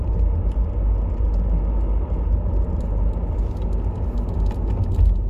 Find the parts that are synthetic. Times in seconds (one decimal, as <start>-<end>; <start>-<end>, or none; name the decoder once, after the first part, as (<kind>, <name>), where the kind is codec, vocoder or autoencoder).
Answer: none